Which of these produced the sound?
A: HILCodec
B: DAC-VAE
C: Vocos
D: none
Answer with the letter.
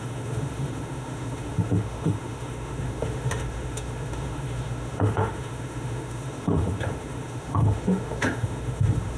B